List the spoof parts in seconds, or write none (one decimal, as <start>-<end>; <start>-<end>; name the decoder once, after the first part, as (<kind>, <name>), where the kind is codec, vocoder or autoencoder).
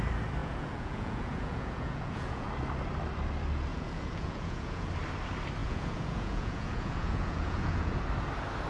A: 0.4-2.5 (vocoder, Vocos); 3.7-4.9; 5.6-8.0